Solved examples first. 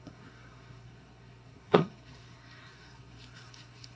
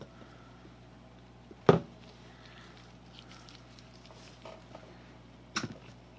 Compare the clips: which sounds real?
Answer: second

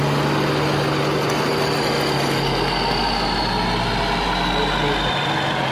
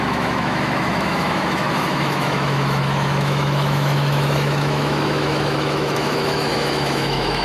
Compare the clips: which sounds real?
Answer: first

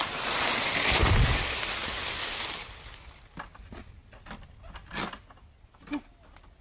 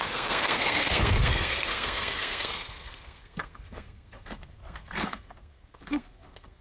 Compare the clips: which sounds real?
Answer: first